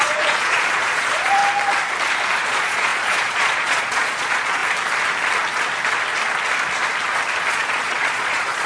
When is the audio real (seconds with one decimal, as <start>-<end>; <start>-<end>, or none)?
1.4-2.4; 4.6-7.5